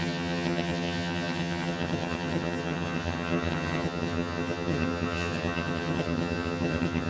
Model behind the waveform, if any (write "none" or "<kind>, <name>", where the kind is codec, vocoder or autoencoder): vocoder, HiFi-GAN